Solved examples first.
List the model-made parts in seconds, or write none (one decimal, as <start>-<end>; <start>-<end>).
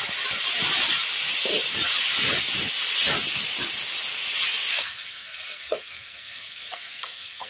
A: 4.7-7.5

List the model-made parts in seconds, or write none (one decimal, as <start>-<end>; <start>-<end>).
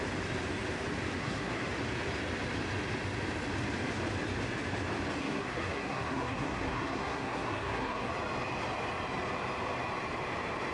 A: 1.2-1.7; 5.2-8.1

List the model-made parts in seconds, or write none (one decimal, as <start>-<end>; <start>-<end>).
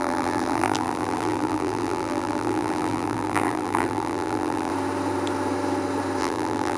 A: 0.0-4.7; 6.2-6.8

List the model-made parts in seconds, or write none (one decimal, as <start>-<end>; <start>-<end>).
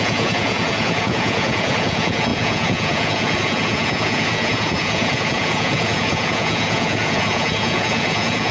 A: 0.0-8.5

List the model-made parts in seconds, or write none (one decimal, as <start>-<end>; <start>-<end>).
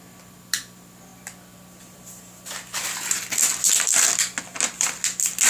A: none